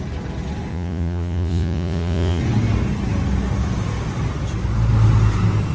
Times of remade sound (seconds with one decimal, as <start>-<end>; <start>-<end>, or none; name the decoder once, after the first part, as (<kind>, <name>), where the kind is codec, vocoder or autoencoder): 0.7-2.4 (vocoder, Vocos)